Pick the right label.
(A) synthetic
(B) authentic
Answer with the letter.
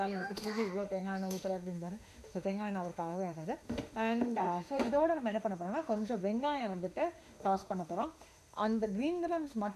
A